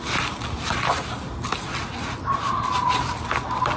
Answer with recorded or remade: recorded